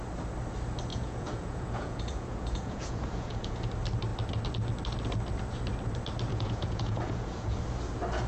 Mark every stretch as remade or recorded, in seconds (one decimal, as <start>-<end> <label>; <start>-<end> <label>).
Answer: 0.0-0.9 recorded; 0.9-3.6 remade; 3.6-6.3 recorded; 6.3-7.6 remade; 7.6-8.3 recorded